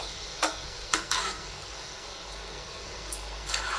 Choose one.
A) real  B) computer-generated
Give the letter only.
B